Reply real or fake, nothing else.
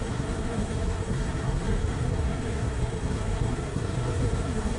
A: fake